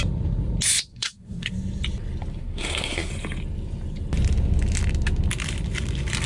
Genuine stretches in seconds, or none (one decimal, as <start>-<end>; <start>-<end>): 0.0-0.9; 1.5-2.4; 3.1-6.3